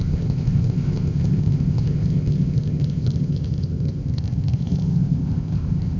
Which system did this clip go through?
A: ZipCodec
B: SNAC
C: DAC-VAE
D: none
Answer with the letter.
A